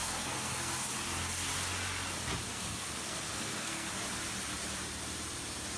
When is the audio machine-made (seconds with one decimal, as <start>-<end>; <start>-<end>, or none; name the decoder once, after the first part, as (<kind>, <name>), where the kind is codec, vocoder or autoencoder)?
0.0-0.9 (codec, SNAC); 2.5-3.9